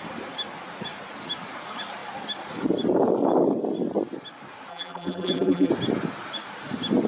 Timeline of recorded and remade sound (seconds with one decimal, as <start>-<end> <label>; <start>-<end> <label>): 0.0-4.7 recorded; 4.7-5.7 remade; 5.7-7.1 recorded